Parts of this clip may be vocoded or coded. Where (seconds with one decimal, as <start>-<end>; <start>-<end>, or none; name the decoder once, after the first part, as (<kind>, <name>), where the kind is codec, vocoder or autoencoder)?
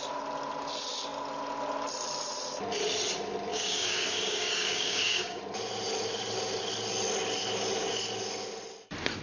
3.5-5.4 (codec, DAC)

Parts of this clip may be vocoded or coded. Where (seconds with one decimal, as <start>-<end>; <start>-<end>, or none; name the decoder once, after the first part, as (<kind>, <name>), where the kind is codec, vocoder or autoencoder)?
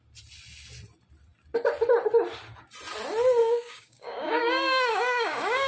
3.4-5.7 (codec, DAC)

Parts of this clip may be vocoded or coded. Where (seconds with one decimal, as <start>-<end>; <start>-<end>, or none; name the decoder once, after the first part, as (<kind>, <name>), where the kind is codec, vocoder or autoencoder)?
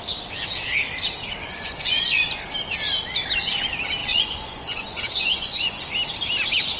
1.4-2.4 (vocoder, Vocos); 4.0-5.9